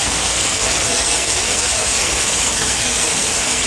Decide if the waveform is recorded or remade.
remade